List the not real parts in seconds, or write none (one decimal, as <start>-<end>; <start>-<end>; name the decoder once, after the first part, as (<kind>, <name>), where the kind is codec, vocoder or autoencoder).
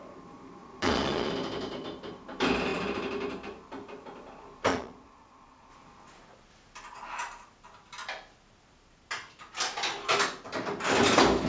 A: 0.6-1.3 (vocoder, Vocos); 4.7-5.7